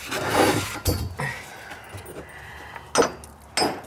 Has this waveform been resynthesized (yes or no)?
no